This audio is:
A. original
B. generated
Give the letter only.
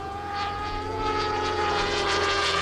B